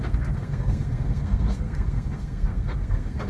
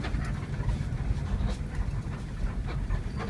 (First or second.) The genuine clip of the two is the second